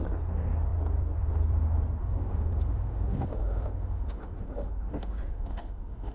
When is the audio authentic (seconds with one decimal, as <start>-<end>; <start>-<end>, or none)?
0.0-2.0